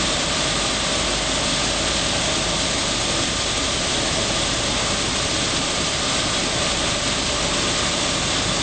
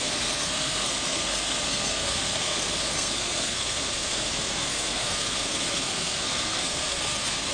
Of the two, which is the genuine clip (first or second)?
first